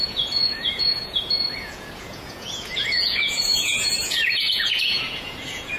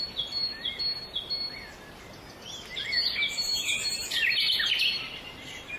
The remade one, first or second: first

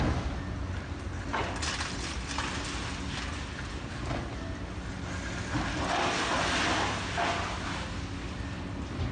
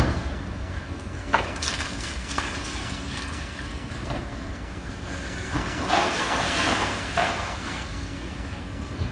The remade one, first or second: second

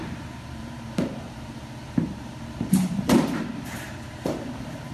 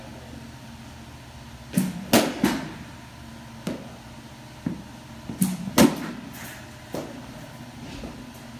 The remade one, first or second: first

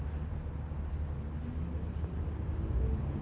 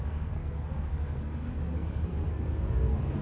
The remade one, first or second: second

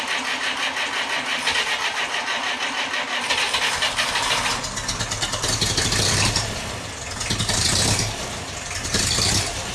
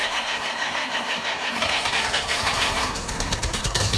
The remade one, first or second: second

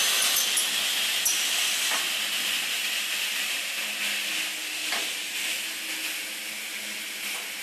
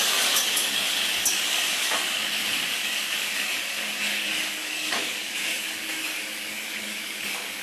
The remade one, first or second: second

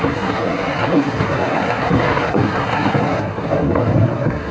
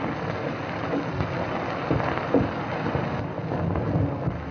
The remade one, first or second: first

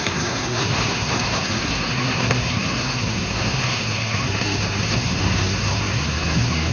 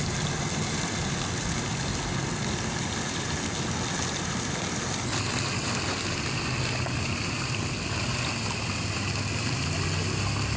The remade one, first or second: first